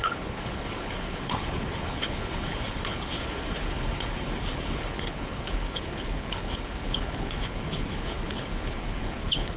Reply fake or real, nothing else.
fake